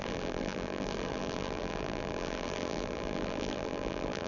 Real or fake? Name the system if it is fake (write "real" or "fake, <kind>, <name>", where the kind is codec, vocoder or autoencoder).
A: fake, vocoder, BigVGAN v2